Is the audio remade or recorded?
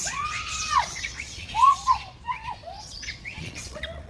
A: remade